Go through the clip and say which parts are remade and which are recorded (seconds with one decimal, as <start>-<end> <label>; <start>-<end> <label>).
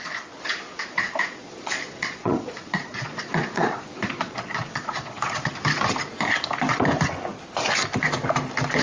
0.0-1.4 recorded; 1.4-5.5 remade; 5.5-8.8 recorded